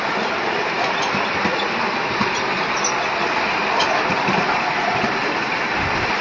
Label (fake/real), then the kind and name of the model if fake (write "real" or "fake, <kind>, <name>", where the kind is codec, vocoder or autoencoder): real